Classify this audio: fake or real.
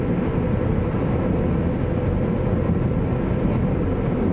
real